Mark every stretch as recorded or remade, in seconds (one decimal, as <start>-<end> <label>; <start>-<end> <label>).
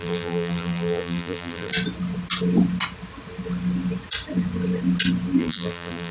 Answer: 0.0-1.7 remade; 1.7-5.4 recorded; 5.4-6.1 remade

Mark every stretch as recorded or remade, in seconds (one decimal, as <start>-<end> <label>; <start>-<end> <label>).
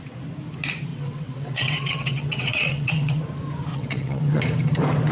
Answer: 0.0-0.9 recorded; 0.9-3.2 remade; 3.2-3.7 recorded; 3.7-4.4 remade; 4.4-5.1 recorded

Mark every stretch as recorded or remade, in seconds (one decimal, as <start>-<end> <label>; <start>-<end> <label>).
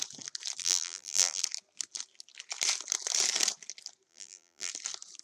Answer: 0.0-0.6 recorded; 0.6-1.4 remade; 1.4-4.1 recorded; 4.1-4.7 remade; 4.7-5.2 recorded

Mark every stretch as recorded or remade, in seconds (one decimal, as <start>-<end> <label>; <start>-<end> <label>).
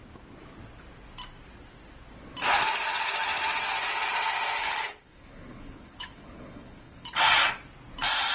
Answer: 0.0-4.6 recorded; 4.6-7.2 remade; 7.2-8.3 recorded